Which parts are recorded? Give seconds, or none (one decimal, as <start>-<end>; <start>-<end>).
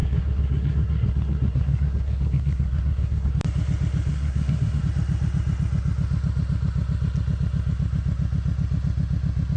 3.3-4.1; 4.8-9.6